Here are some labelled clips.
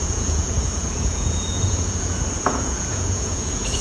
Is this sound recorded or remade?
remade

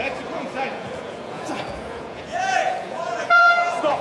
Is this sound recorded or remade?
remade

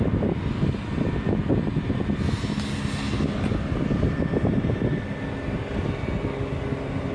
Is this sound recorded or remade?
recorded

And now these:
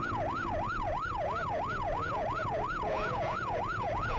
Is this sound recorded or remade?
remade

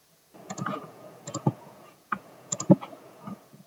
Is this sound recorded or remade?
remade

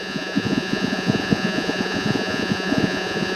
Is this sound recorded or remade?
remade